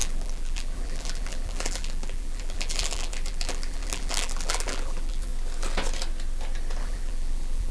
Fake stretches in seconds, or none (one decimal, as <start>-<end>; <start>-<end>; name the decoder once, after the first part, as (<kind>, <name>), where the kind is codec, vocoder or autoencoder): 0.0-5.3 (vocoder, BigVGAN v2); 6.8-7.7